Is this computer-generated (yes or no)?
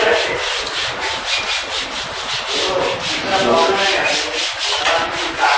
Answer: no